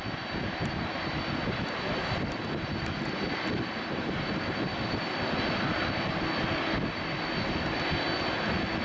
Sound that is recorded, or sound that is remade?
recorded